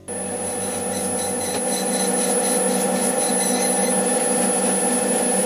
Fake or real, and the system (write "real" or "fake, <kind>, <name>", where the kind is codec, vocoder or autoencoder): real